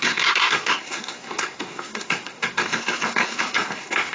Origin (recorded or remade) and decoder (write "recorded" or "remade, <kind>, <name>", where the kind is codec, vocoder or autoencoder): remade, codec, SNAC